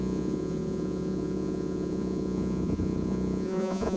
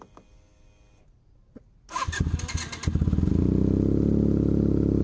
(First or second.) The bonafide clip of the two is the second